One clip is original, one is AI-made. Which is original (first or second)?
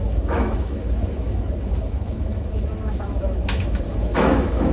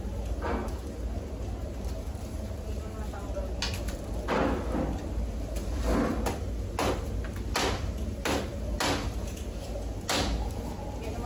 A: second